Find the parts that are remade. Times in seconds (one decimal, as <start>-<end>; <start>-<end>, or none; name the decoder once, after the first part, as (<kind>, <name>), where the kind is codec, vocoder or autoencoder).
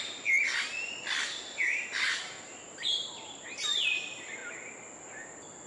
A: none